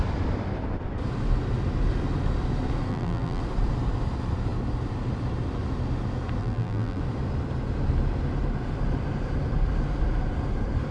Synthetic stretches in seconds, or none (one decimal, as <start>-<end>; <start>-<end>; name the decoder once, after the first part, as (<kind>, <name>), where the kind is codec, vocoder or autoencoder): 2.9-3.4 (vocoder, BigVGAN v2); 6.4-7.0